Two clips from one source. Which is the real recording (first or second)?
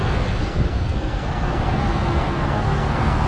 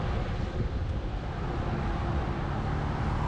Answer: second